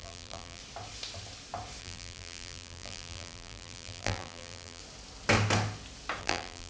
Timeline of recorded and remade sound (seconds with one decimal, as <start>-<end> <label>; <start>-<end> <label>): 0.0-0.6 remade; 0.6-1.8 recorded; 1.8-4.8 remade; 4.8-6.2 recorded; 6.2-6.7 remade